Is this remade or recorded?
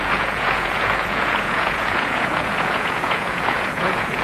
remade